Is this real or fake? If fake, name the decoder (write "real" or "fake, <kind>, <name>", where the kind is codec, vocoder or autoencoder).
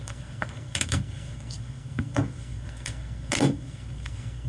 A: fake, codec, SNAC